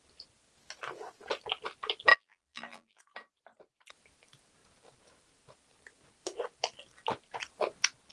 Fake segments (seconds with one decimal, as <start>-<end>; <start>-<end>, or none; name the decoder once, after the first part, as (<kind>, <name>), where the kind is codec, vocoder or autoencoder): 2.1-3.0 (vocoder, BigVGAN v2)